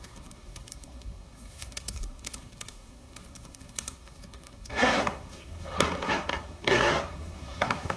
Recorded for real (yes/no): no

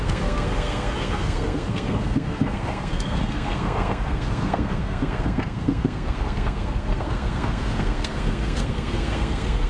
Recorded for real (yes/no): no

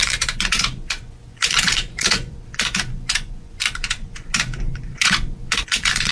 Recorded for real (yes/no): no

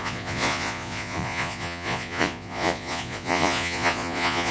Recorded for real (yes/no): no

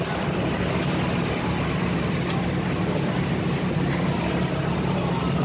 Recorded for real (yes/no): no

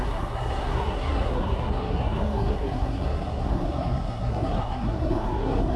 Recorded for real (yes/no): no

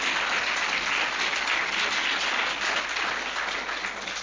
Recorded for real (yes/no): yes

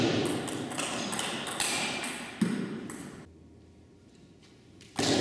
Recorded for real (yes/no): yes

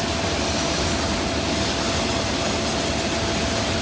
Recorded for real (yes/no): yes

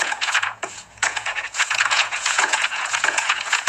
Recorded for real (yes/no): no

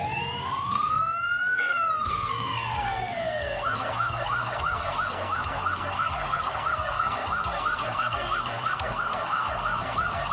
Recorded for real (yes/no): no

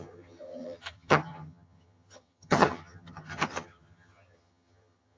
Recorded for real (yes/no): no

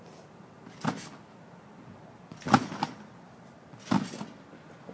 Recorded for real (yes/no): yes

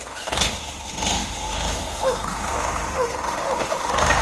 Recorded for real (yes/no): no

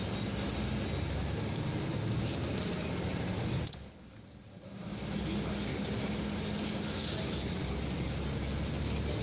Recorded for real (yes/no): yes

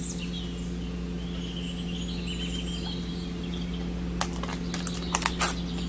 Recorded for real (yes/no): yes